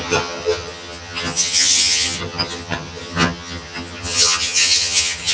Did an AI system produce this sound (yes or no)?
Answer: yes